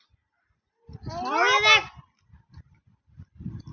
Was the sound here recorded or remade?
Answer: recorded